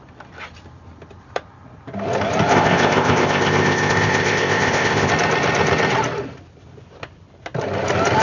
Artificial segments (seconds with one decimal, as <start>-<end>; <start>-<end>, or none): 2.5-5.1